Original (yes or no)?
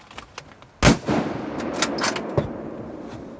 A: yes